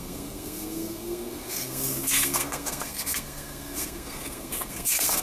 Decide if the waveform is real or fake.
fake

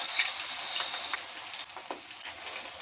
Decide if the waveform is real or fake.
real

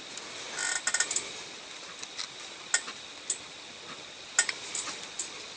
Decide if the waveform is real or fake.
real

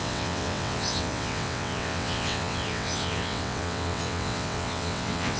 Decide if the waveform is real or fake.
fake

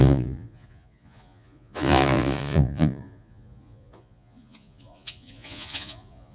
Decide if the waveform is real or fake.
fake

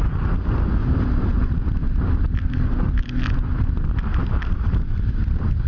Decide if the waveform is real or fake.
fake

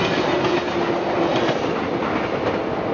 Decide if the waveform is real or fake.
real